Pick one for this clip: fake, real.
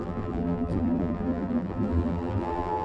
fake